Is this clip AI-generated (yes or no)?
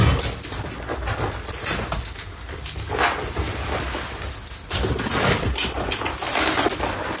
no